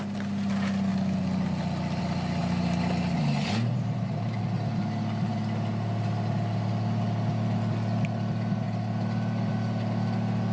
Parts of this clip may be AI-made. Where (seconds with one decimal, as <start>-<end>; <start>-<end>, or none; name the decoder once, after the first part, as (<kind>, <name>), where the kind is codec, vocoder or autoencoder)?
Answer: 2.4-4.4 (vocoder, BigVGAN v2)

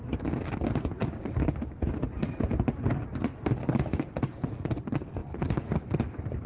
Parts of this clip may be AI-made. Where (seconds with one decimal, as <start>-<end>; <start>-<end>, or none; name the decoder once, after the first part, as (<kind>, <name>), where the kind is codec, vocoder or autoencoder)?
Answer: none

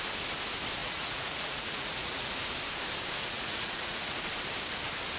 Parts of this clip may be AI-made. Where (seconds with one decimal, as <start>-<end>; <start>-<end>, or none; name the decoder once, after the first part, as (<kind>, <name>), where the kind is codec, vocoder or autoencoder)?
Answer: 0.8-2.3 (vocoder, Vocos); 3.2-4.2

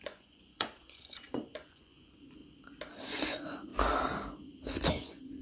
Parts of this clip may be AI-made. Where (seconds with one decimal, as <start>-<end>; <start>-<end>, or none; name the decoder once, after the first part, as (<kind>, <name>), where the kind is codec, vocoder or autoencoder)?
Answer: 0.0-2.4 (vocoder, Vocos); 2.9-3.7; 4.9-5.4